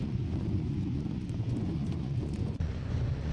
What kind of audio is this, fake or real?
fake